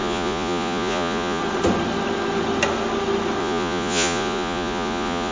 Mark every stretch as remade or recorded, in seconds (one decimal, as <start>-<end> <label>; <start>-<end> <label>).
0.0-1.4 remade; 1.4-3.4 recorded; 3.4-5.3 remade

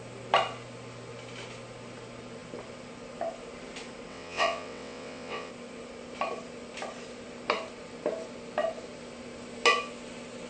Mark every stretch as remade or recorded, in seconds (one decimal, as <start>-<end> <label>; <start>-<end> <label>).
0.0-4.1 recorded; 4.1-5.5 remade; 5.5-10.5 recorded